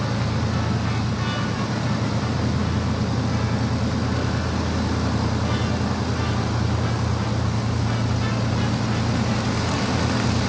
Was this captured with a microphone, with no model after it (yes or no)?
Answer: yes